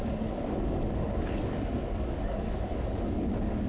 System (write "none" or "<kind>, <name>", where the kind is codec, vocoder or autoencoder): codec, DAC